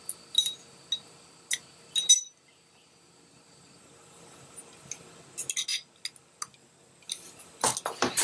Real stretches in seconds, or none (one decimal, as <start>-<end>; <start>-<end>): 0.0-8.2